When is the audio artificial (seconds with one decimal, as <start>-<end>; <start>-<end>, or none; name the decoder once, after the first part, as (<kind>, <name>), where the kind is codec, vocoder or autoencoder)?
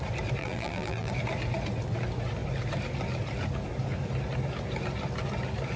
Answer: 0.4-1.1 (vocoder, BigVGAN v2)